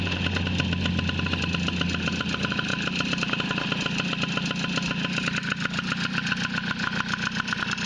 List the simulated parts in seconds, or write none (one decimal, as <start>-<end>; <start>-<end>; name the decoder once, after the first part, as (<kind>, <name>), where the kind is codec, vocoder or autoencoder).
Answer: none